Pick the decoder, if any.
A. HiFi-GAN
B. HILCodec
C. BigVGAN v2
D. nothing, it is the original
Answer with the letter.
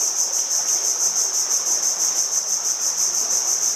D